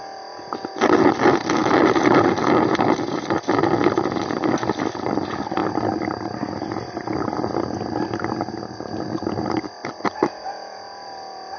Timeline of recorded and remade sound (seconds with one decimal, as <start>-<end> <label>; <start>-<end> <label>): 0.0-11.6 recorded